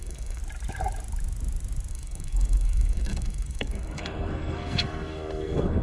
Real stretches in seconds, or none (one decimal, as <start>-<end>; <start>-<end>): 0.4-1.9

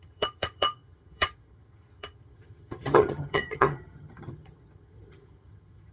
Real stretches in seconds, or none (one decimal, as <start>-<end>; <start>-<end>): none